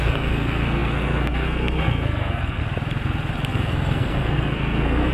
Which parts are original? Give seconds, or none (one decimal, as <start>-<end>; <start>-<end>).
2.6-3.5